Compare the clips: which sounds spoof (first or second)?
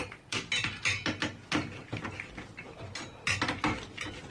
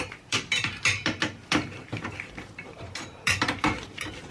second